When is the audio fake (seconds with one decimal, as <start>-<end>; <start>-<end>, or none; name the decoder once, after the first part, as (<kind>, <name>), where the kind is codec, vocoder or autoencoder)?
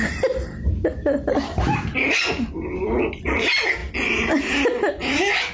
none